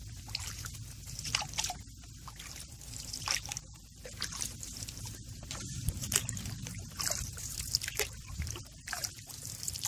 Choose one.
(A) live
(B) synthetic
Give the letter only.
B